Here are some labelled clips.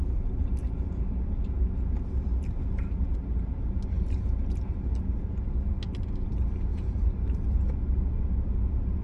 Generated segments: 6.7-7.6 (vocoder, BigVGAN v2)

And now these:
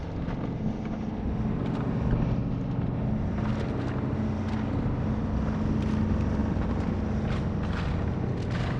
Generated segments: 6.4-6.9 (vocoder, BigVGAN v2)

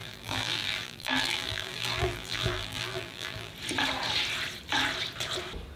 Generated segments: 0.0-3.5 (vocoder, BigVGAN v2)

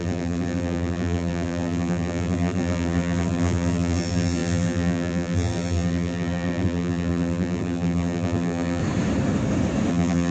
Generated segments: 0.0-8.8 (vocoder, BigVGAN v2); 9.9-10.3